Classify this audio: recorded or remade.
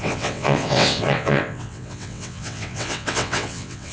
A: remade